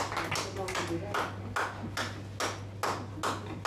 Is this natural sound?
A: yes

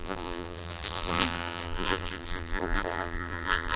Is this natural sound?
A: no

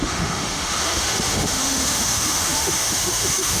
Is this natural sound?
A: no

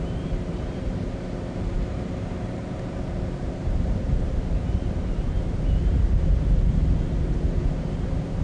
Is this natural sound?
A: no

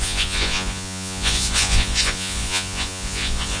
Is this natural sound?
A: no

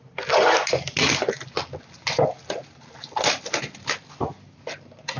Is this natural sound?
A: yes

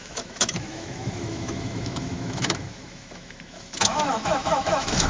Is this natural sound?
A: no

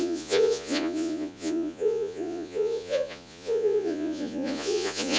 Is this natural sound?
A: no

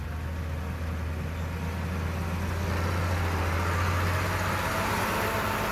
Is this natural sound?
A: yes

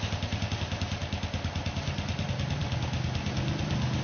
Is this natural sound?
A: yes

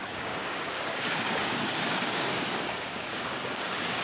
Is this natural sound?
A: no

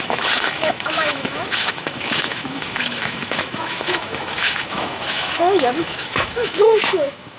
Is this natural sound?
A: no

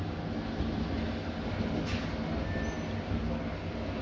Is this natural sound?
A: yes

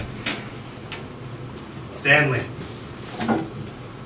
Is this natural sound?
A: yes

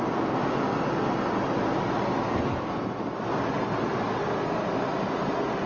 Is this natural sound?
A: yes